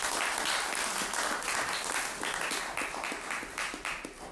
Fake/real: real